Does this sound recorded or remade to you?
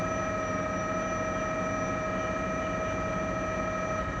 recorded